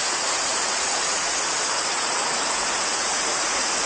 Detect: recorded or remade remade